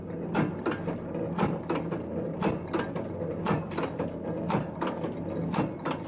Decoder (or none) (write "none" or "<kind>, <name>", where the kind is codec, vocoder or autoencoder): none